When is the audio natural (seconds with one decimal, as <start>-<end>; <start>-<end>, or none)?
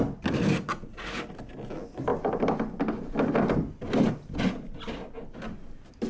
0.0-6.1